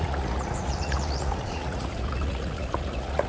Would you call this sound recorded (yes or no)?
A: no